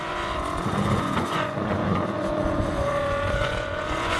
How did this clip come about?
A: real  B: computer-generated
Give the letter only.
B